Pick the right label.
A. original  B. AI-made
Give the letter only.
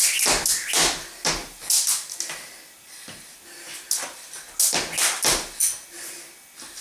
A